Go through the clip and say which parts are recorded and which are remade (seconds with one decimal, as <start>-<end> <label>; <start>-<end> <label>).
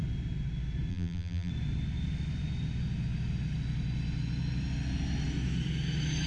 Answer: 0.0-0.9 recorded; 0.9-1.5 remade; 1.5-6.3 recorded